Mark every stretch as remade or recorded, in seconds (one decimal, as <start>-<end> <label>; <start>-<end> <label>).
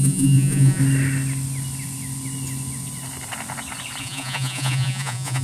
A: 0.0-0.8 remade; 0.8-4.0 recorded; 4.0-5.4 remade